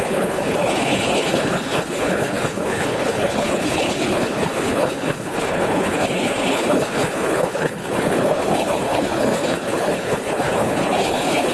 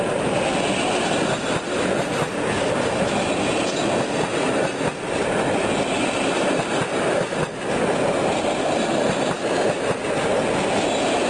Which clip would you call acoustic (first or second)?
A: second